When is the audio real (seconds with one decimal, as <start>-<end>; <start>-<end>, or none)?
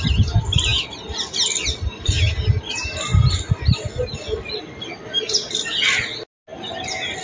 0.0-7.2